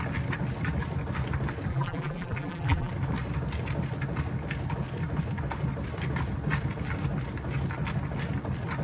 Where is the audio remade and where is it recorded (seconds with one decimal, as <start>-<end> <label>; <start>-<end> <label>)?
0.0-1.7 recorded; 1.7-2.9 remade; 2.9-8.8 recorded